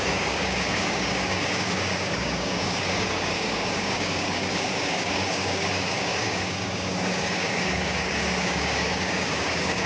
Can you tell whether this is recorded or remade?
remade